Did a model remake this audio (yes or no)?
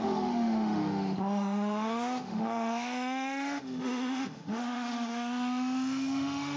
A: yes